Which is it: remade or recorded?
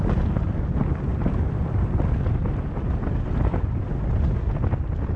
recorded